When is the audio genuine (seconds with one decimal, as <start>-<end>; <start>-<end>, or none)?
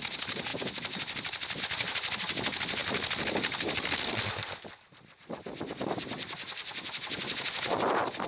0.0-8.3